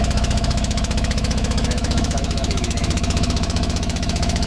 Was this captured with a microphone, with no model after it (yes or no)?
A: no